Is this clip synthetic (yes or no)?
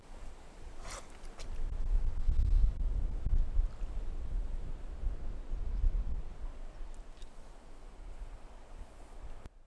no